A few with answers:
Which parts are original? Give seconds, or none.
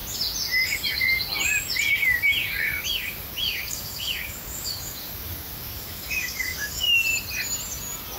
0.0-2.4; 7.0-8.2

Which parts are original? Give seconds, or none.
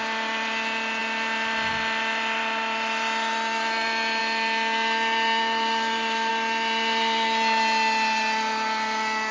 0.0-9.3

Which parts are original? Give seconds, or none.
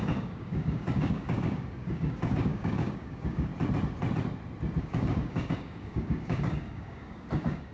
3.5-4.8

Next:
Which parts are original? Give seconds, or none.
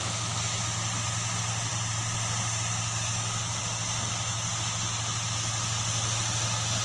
0.0-6.8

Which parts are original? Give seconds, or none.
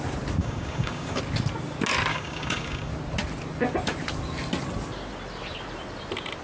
0.0-0.4; 1.2-2.1; 2.9-6.4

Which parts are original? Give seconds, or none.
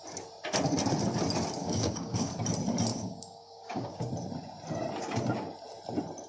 0.0-1.6; 2.3-2.9; 4.1-6.3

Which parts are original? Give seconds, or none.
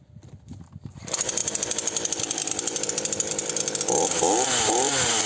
0.0-5.3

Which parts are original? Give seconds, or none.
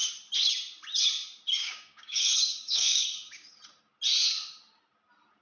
0.0-1.6; 3.6-5.4